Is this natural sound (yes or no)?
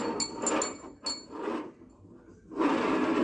yes